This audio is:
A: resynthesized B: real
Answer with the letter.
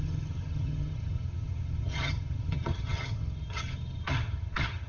A